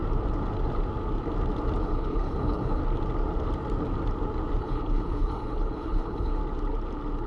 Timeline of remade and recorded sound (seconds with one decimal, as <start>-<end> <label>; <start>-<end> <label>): 0.0-1.8 recorded; 1.8-2.8 remade; 2.8-4.6 recorded; 4.6-6.4 remade; 6.4-7.3 recorded